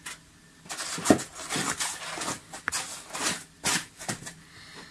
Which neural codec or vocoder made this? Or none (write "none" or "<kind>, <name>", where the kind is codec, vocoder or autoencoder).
none